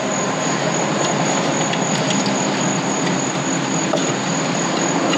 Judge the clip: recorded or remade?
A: recorded